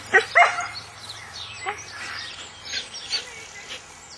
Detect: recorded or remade recorded